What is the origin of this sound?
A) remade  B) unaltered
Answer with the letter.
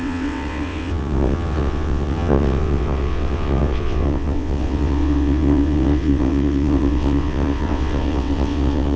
A